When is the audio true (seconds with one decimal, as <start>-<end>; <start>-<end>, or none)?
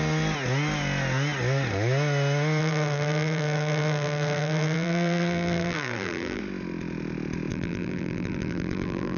0.0-2.6; 6.4-7.5